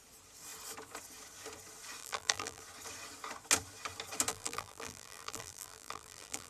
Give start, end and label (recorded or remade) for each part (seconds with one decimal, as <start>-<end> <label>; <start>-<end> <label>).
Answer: 0.0-2.0 recorded; 2.0-2.6 remade; 2.6-4.3 recorded; 4.3-6.5 remade